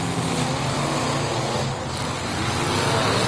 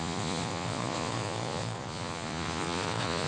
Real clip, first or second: first